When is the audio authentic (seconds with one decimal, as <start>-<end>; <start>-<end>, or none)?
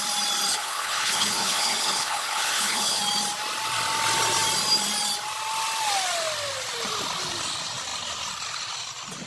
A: 0.0-0.5; 3.0-9.3